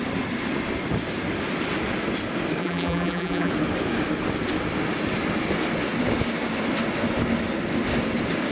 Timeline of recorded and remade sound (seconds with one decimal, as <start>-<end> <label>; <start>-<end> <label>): 0.0-2.6 recorded; 2.6-3.5 remade; 3.5-8.5 recorded